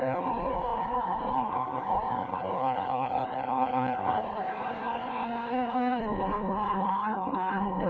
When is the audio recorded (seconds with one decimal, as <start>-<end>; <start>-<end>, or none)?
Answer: none